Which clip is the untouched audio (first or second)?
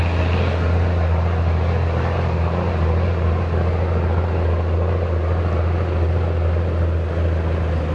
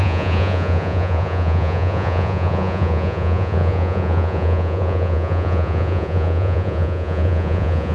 first